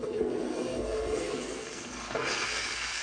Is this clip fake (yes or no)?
yes